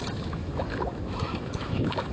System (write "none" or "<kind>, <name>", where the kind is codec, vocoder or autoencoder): autoencoder, DAC-VAE